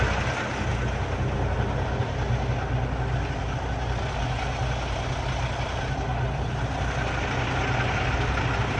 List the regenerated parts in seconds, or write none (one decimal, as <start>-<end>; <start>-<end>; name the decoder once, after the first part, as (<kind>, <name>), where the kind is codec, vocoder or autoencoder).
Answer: none